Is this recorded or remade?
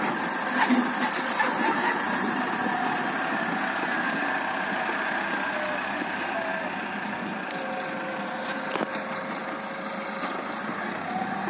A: recorded